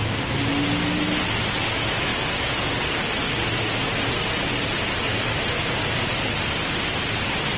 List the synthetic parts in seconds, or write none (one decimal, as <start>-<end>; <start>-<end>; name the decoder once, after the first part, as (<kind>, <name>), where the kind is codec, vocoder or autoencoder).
none